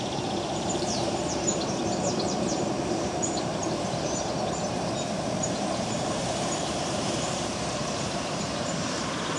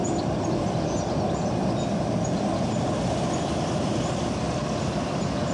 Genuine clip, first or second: second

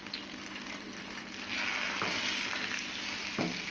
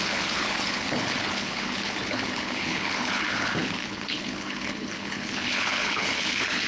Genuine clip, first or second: first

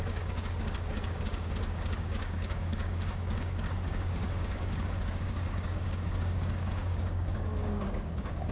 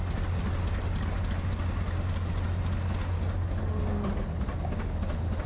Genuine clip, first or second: second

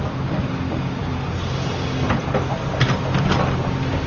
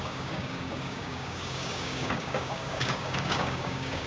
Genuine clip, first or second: first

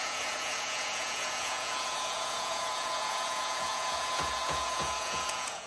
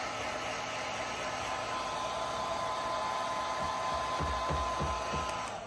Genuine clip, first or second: second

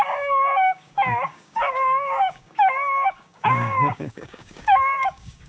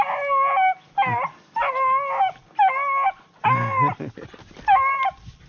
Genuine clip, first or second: second